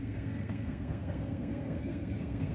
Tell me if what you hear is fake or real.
fake